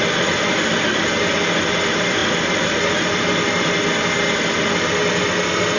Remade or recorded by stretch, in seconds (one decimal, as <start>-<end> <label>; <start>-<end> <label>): 0.0-5.8 recorded